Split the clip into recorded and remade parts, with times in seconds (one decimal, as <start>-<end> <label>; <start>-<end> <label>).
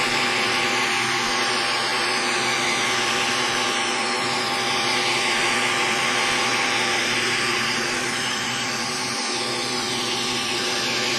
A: 0.0-6.5 recorded; 6.5-9.2 remade; 9.2-11.2 recorded